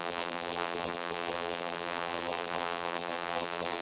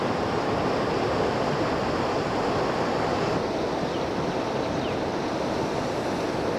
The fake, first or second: first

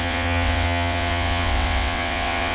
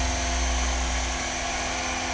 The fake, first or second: first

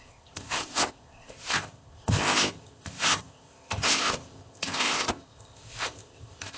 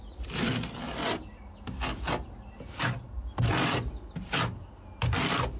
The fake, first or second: first